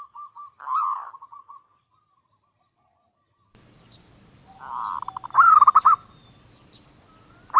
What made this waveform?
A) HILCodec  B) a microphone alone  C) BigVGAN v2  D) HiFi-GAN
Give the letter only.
C